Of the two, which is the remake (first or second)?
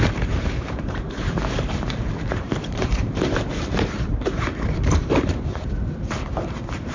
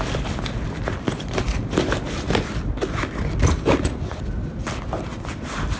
first